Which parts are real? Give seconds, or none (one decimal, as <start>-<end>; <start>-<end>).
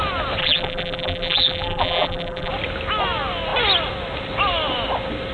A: 0.0-0.4; 2.5-5.3